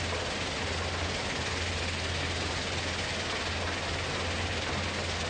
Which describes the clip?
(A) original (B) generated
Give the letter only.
A